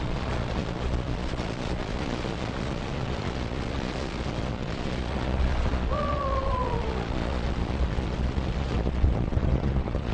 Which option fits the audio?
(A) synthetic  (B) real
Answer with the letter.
A